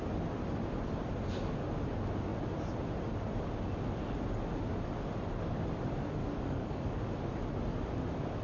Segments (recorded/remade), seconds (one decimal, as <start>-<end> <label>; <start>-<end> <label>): 0.0-6.2 recorded; 6.2-7.1 remade; 7.1-8.4 recorded